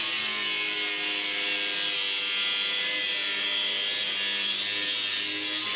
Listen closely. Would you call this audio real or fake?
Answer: real